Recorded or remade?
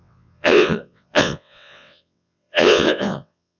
remade